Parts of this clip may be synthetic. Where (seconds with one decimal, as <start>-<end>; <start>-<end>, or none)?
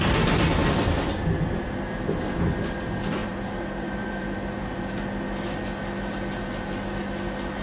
3.2-5.0